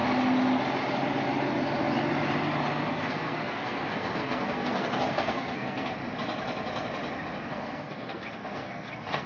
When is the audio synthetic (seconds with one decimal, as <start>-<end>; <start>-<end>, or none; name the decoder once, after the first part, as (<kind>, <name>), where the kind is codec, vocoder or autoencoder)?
2.9-5.9 (codec, SNAC); 7.4-9.3